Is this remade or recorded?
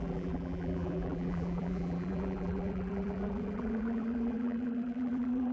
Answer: remade